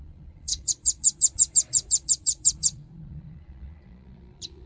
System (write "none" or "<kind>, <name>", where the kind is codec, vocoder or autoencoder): vocoder, Vocos